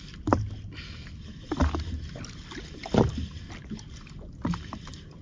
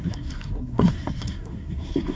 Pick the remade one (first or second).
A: second